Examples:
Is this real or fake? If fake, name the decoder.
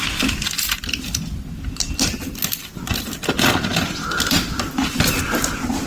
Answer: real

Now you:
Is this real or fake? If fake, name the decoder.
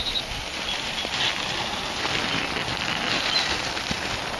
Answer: fake, vocoder, BigVGAN v2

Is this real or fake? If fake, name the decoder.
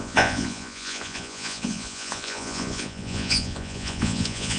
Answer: fake, vocoder, Vocos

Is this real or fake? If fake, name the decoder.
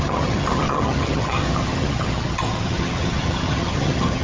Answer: fake, vocoder, HiFi-GAN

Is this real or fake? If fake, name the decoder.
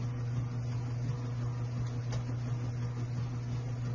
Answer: real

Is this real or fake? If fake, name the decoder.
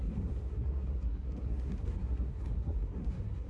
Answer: fake, codec, SNAC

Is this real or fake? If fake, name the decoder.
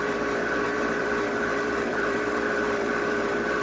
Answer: fake, vocoder, BigVGAN v2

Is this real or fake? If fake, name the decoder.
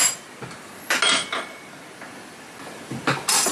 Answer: real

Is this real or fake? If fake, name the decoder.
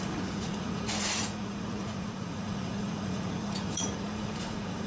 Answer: fake, vocoder, Vocos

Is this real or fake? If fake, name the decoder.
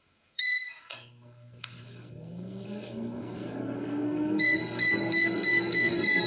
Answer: fake, codec, SNAC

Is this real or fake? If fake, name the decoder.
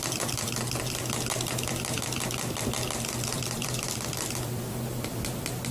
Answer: fake, vocoder, BigVGAN v2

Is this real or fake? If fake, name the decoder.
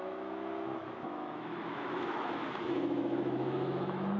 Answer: fake, autoencoder, DAC-VAE